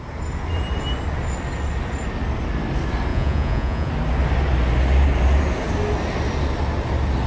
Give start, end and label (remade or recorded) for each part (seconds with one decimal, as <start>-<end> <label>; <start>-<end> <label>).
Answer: 0.0-3.1 recorded; 3.1-3.9 remade; 3.9-7.3 recorded